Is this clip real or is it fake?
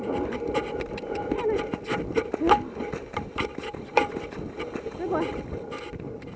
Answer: real